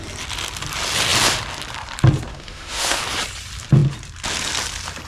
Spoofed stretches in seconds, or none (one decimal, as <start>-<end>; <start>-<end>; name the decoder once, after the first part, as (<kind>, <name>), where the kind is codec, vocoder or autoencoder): 2.3-3.0 (autoencoder, DAC-VAE)